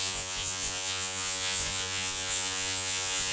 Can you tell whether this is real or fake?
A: fake